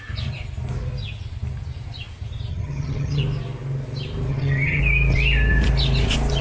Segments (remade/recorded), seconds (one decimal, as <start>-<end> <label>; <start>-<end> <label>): 0.0-2.5 recorded; 2.5-3.2 remade; 3.2-4.3 recorded; 4.3-4.8 remade; 4.8-6.4 recorded